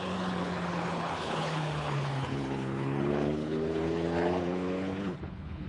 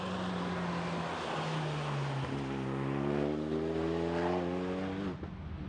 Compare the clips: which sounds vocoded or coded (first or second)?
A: first